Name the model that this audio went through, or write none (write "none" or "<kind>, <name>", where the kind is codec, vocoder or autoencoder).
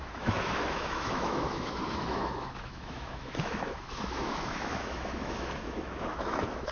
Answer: autoencoder, DAC-VAE